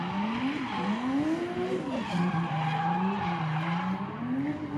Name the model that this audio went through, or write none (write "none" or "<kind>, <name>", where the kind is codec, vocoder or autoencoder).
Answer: none